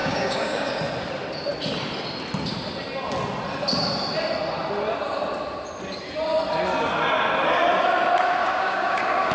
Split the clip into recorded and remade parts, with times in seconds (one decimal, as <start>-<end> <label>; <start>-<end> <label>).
0.0-0.8 remade; 0.8-8.4 recorded; 8.4-9.3 remade